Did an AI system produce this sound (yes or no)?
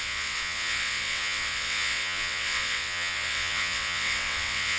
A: yes